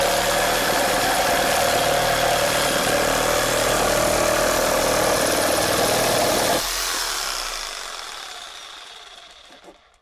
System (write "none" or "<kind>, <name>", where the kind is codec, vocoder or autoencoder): none